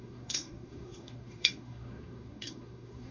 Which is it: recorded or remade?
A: remade